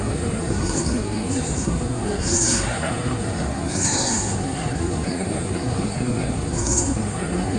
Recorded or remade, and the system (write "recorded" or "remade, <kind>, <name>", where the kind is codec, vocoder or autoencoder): remade, codec, SNAC